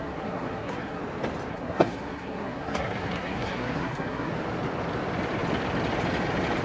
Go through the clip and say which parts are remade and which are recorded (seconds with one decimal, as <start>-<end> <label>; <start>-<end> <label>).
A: 0.0-1.0 remade; 1.0-1.5 recorded; 1.5-4.3 remade; 4.3-6.6 recorded